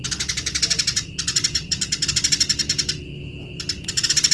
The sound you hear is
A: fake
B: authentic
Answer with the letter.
B